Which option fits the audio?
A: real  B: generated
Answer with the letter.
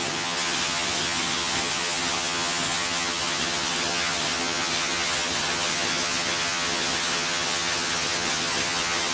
B